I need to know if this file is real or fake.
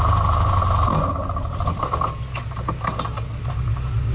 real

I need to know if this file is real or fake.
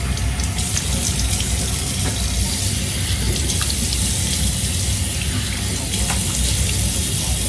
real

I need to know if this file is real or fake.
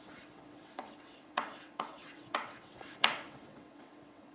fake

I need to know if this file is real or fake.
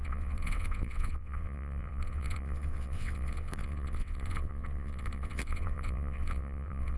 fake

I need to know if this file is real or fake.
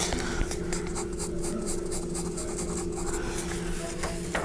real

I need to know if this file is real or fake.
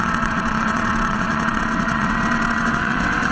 fake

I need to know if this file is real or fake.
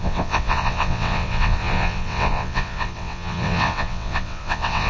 fake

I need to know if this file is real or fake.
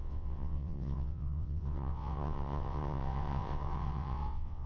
fake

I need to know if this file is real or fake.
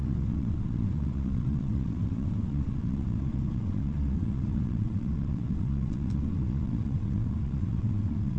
fake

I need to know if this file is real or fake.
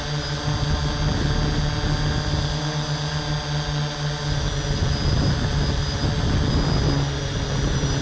real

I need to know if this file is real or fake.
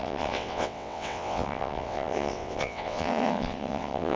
fake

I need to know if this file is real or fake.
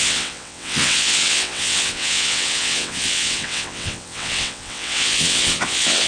fake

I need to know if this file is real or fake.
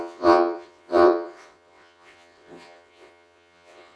fake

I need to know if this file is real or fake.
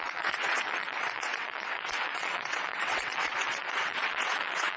fake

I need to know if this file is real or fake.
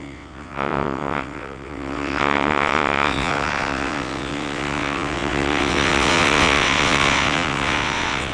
fake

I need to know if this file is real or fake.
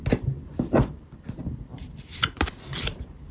real